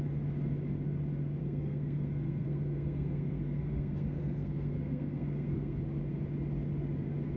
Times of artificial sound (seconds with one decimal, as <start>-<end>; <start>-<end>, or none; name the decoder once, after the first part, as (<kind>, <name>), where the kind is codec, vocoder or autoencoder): 1.4-5.8 (codec, SNAC)